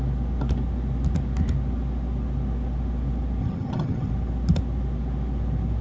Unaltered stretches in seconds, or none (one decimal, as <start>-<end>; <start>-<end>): 0.0-3.4; 4.1-5.8

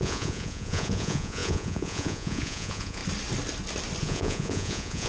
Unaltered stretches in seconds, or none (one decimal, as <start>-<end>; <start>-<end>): 3.0-4.0

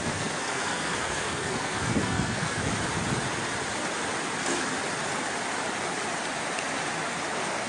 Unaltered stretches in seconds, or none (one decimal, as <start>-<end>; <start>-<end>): 2.7-7.3

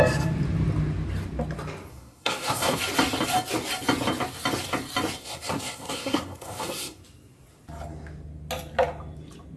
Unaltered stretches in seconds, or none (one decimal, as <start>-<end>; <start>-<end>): 0.0-1.9; 2.8-5.2; 7.0-9.6